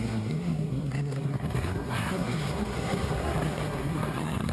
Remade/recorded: remade